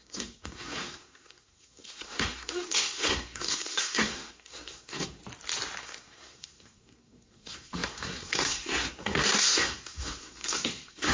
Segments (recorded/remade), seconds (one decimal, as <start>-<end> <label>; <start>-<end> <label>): 0.0-5.2 remade; 5.2-5.8 recorded; 5.8-11.1 remade